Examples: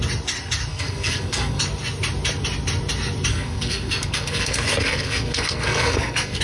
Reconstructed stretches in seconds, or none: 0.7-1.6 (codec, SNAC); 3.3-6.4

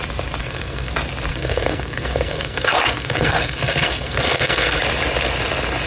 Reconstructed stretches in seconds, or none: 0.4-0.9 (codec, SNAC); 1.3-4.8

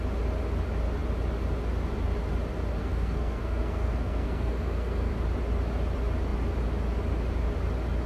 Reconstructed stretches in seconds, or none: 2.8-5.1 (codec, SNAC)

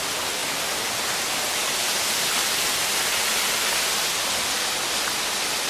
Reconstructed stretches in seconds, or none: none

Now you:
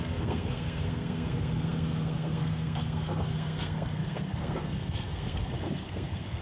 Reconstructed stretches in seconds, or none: 0.0-6.4 (codec, SNAC)

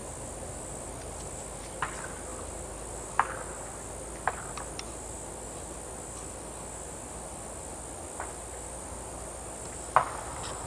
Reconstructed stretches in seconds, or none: none

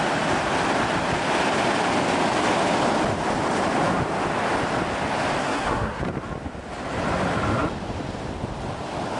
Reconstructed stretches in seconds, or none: 5.4-6.0 (codec, SNAC)